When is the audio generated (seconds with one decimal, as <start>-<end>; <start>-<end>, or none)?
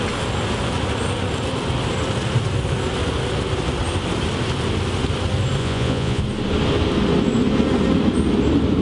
5.6-6.2